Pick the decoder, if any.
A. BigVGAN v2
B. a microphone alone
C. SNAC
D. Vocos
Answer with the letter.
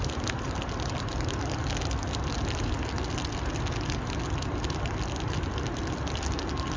B